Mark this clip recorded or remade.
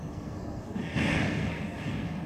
remade